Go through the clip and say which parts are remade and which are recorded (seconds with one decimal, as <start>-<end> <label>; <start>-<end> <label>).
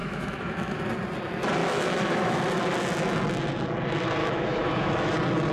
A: 0.0-0.8 remade; 0.8-1.6 recorded; 1.6-2.4 remade; 2.4-4.2 recorded; 4.2-5.1 remade; 5.1-5.5 recorded